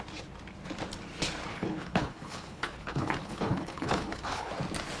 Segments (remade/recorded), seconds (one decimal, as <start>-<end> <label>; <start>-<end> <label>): 0.0-1.5 recorded; 1.5-4.5 remade; 4.5-5.0 recorded